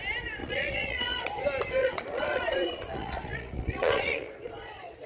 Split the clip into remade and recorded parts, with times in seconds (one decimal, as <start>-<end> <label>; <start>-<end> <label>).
0.0-0.4 recorded; 0.4-1.4 remade; 1.4-1.8 recorded; 1.8-5.1 remade